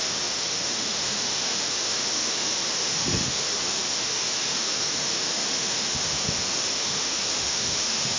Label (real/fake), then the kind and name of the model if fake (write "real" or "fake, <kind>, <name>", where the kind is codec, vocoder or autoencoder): fake, autoencoder, DAC-VAE